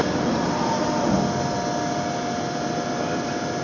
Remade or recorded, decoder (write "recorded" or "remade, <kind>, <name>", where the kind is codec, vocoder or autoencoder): recorded